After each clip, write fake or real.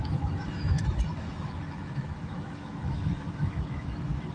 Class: fake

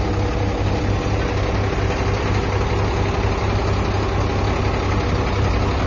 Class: real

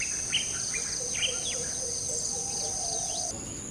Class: real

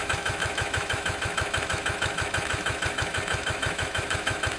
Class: fake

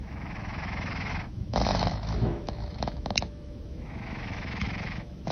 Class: fake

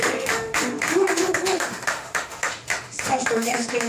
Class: fake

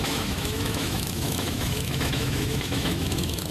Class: fake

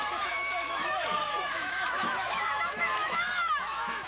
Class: fake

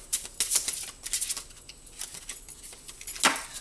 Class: real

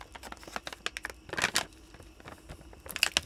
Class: real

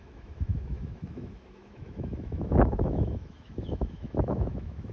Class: fake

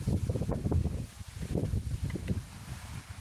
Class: real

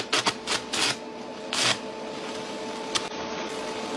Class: real